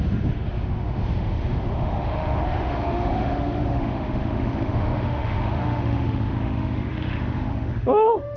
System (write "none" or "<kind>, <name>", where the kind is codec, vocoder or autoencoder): autoencoder, DAC-VAE